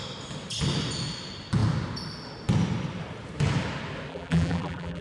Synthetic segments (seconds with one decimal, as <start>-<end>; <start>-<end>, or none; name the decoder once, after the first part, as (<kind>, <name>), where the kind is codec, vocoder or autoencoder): 4.1-5.0 (vocoder, BigVGAN v2)